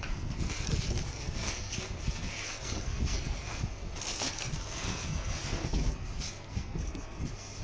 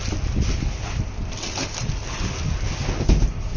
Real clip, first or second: second